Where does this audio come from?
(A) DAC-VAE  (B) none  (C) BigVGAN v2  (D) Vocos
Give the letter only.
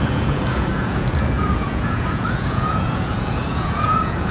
D